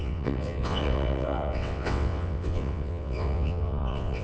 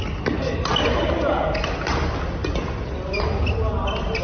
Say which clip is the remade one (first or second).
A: first